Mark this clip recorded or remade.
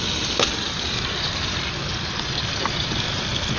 recorded